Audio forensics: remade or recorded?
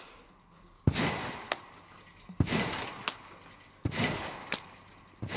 recorded